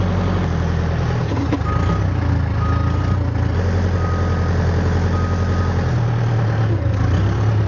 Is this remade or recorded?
recorded